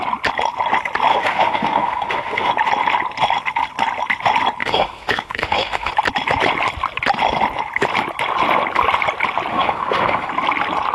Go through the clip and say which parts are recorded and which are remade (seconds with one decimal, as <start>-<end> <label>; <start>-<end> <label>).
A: 0.0-1.1 recorded; 1.1-2.5 remade; 2.5-4.6 recorded; 4.6-5.9 remade; 5.9-9.5 recorded; 9.5-10.3 remade; 10.3-10.9 recorded